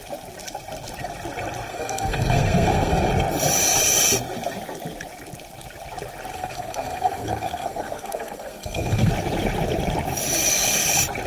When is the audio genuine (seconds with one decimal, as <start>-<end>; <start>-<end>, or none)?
0.0-1.7; 3.1-6.3; 9.1-11.3

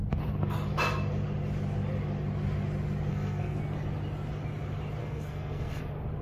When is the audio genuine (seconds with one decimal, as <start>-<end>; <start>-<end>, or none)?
0.0-3.1; 3.6-5.0; 5.8-6.2